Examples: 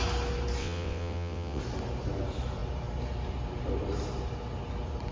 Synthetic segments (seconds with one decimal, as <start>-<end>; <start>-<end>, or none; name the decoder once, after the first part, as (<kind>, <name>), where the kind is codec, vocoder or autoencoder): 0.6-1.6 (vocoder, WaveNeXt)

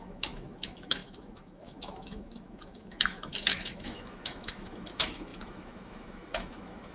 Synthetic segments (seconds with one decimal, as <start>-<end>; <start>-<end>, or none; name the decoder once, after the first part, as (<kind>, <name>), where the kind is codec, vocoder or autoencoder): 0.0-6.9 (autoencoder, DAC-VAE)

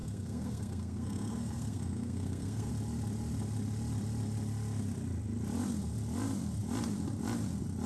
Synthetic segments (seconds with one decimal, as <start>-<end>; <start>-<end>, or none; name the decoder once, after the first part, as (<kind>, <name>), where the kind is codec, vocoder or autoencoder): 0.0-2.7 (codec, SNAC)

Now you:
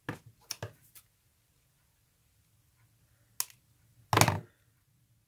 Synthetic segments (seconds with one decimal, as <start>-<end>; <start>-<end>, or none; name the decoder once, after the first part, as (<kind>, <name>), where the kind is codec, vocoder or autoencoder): none

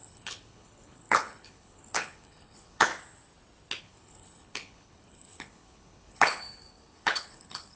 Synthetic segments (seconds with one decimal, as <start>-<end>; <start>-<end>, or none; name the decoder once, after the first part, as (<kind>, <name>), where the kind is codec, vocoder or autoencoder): 0.0-2.9 (codec, HILCodec); 3.8-7.8

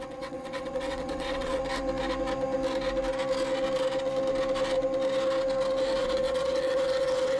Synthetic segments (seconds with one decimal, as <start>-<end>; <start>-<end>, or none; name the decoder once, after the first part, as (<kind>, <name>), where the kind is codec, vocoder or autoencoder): 0.0-1.6 (vocoder, WaveNeXt); 6.0-7.4

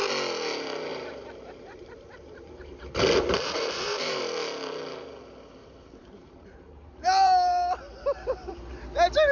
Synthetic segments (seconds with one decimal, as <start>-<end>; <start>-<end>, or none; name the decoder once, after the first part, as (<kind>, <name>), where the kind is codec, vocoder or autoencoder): 0.9-4.2 (vocoder, BigVGAN v2); 5.6-8.7

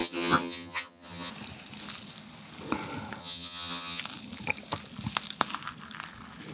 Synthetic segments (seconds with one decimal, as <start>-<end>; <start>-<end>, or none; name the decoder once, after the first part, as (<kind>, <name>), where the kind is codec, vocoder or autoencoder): 0.0-1.3 (vocoder, HiFi-GAN); 3.2-4.0